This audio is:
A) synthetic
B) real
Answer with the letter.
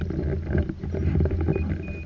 B